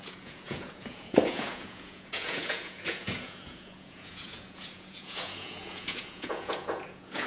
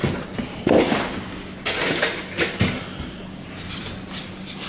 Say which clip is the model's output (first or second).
first